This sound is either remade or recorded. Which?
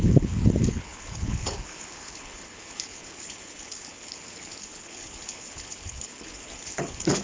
remade